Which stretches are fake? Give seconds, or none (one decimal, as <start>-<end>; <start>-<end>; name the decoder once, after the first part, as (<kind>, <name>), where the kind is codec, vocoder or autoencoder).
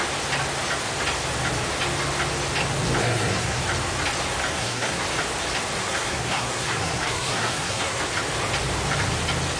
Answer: 3.0-3.6 (codec, SNAC); 4.5-5.0; 5.8-8.0